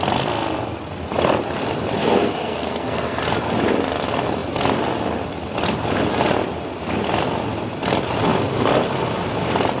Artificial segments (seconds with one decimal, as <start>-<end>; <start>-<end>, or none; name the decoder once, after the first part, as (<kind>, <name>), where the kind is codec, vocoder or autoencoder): 2.0-3.2 (codec, SNAC)